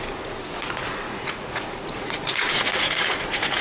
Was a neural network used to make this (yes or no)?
yes